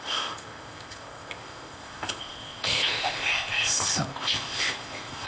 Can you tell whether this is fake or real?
fake